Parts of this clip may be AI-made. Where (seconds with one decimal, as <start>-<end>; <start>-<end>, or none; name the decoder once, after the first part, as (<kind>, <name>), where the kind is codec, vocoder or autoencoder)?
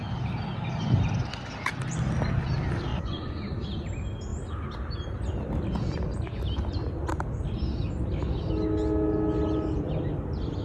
2.9-3.5 (vocoder, Vocos)